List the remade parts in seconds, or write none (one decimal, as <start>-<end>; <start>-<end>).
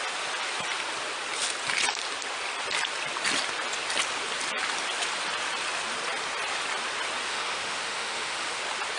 7.3-8.6